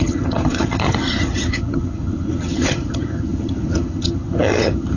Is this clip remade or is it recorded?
remade